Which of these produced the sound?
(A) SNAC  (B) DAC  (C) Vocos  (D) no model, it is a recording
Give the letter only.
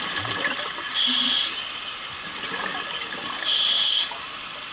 D